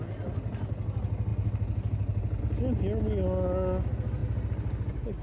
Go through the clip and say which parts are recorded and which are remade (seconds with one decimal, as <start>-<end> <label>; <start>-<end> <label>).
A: 0.0-5.2 recorded